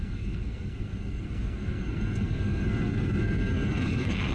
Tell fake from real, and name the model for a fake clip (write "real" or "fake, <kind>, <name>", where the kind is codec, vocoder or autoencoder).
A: fake, codec, SNAC